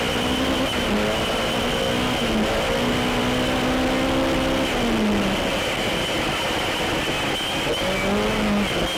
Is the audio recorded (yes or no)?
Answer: yes